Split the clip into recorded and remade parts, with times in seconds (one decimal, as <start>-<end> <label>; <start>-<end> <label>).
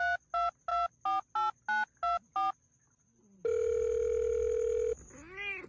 0.0-5.7 recorded